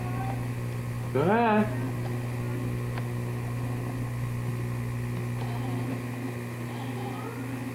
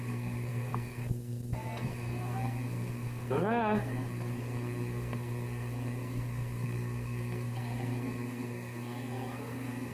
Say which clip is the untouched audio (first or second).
first